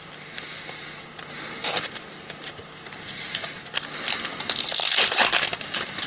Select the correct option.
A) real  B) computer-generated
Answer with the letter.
A